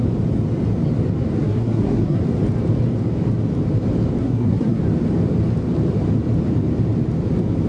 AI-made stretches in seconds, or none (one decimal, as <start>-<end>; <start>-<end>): 1.4-2.2; 4.2-4.8